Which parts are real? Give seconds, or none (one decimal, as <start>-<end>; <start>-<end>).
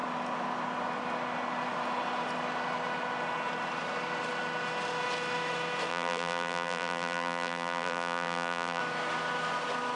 0.0-5.9; 8.8-10.0